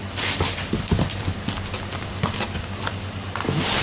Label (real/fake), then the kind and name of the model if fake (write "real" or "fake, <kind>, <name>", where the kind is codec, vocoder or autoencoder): real